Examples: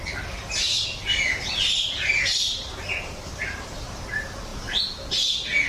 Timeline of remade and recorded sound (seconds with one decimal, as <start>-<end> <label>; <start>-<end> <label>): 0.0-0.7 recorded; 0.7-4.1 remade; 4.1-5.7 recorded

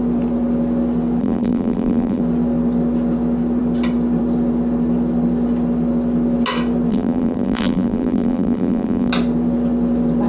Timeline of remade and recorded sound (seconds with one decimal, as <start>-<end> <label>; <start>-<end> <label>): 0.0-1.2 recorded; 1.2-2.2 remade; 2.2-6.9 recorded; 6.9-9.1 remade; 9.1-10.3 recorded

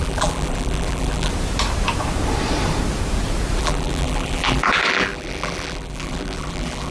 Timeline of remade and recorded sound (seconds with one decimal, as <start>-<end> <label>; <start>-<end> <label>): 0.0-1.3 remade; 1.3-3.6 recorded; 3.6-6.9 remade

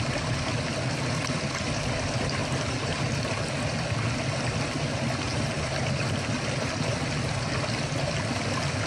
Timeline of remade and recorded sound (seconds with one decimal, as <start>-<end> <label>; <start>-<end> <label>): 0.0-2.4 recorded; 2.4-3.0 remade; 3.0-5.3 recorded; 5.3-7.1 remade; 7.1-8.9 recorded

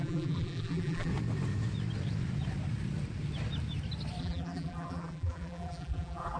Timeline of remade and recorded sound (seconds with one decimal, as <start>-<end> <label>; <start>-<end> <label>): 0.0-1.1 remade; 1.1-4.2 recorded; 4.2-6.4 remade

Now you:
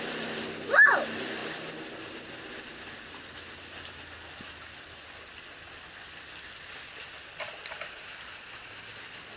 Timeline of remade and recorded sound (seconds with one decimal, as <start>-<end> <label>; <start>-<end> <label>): 0.0-9.4 recorded

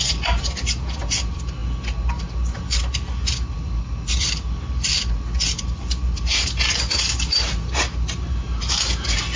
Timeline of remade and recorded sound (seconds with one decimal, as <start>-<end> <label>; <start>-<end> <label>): 0.0-9.4 remade

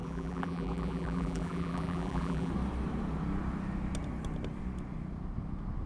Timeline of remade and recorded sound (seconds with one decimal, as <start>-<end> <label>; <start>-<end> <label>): 0.0-2.5 remade; 2.5-5.9 recorded